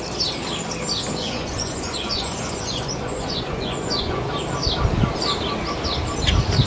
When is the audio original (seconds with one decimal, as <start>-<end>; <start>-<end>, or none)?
0.0-1.2; 4.3-6.7